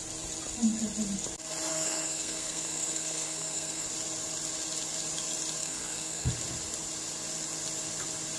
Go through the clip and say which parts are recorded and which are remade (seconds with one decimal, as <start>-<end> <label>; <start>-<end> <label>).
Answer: 0.0-1.7 recorded; 1.7-3.9 remade; 3.9-5.6 recorded; 5.6-6.3 remade; 6.3-8.4 recorded